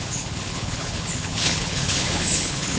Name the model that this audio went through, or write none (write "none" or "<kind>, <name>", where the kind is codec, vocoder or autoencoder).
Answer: codec, HILCodec